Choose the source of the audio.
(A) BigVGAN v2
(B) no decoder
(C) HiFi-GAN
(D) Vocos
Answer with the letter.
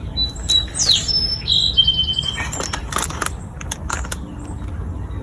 B